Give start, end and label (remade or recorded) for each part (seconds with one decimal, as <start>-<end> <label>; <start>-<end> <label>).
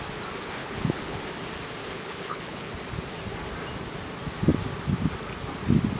0.0-0.6 recorded; 0.6-1.2 remade; 1.2-1.8 recorded; 1.8-2.7 remade; 2.7-6.0 recorded